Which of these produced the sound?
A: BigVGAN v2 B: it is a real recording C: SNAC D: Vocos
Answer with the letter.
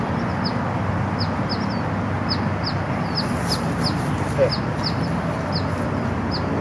B